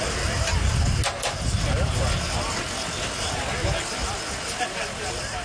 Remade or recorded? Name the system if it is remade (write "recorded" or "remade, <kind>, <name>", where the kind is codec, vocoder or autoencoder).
recorded